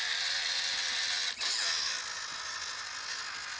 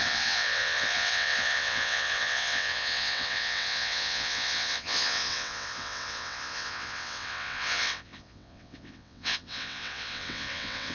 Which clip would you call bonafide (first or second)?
first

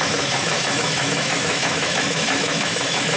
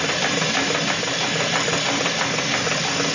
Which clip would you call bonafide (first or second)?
second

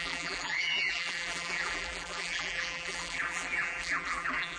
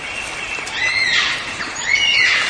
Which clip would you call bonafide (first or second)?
second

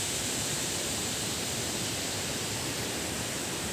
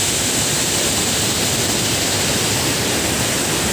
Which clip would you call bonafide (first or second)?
second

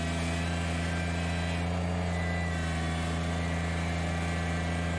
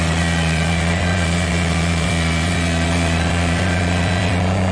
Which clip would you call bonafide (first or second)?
first